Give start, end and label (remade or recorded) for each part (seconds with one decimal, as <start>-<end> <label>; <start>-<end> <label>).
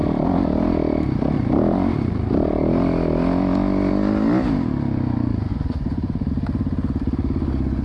0.0-5.5 recorded; 5.5-6.3 remade; 6.3-7.8 recorded